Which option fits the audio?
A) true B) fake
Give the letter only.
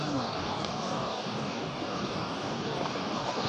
B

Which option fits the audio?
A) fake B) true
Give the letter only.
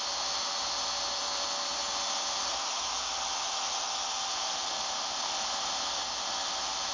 B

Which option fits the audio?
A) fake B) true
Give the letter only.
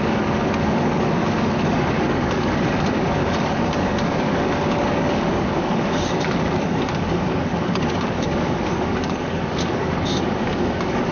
A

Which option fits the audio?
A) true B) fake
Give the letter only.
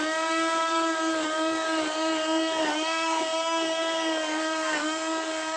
B